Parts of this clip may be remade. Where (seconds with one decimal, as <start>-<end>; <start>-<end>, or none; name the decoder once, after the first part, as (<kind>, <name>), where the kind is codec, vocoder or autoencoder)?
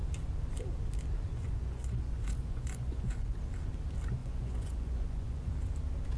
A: 1.3-3.4 (vocoder, Vocos); 4.2-5.5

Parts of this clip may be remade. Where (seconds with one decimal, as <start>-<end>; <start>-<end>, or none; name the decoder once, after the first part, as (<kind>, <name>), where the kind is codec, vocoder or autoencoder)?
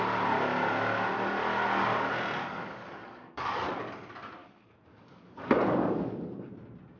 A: 2.4-3.8 (codec, DAC); 4.4-6.5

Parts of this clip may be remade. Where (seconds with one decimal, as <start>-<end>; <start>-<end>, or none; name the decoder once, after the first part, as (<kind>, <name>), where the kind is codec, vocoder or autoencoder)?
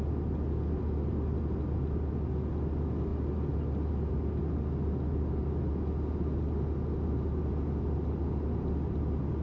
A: none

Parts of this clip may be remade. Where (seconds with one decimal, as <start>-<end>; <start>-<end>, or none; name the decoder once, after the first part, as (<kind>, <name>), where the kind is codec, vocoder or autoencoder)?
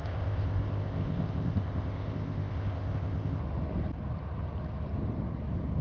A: 0.0-3.4 (codec, ZipCodec)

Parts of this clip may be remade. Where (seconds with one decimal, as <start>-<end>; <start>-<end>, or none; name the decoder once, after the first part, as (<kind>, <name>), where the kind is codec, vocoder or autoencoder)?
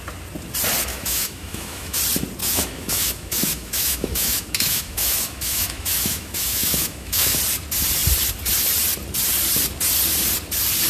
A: 0.9-2.0 (autoencoder, DAC-VAE); 2.4-7.4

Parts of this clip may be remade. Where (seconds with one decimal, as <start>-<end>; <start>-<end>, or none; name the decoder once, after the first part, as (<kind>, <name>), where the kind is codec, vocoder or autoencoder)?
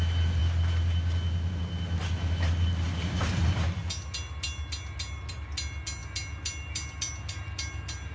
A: none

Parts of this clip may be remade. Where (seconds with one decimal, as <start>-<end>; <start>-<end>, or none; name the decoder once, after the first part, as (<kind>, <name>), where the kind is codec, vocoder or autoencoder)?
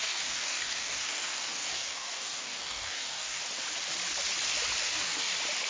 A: 0.0-3.4 (codec, DAC); 4.8-5.3